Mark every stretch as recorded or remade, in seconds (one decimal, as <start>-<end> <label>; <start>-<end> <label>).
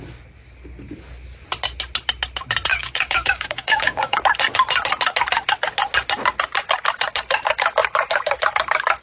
0.0-2.7 recorded; 2.7-4.2 remade; 4.2-9.0 recorded